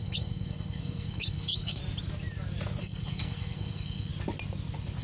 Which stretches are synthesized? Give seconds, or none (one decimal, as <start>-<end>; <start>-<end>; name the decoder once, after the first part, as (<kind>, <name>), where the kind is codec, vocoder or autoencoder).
0.0-1.8 (codec, SNAC); 2.8-4.1